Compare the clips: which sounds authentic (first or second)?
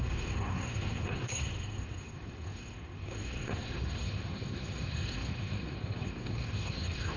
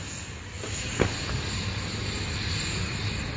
second